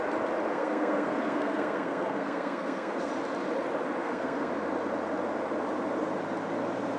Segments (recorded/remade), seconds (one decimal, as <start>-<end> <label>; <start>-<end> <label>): 0.0-0.5 recorded; 0.5-3.1 remade; 3.1-4.0 recorded; 4.0-4.5 remade; 4.5-7.0 recorded